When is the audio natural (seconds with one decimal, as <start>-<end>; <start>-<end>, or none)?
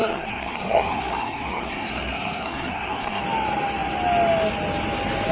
3.2-5.3